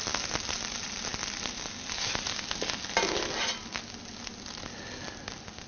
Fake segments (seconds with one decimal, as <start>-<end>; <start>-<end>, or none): none